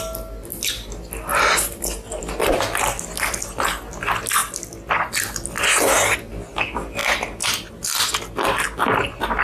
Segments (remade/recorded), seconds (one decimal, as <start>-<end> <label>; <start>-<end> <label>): 0.0-9.4 recorded